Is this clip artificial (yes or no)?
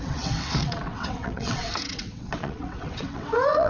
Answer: yes